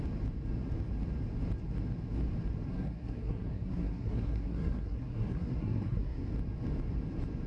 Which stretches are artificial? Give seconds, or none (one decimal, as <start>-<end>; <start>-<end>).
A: 2.7-6.3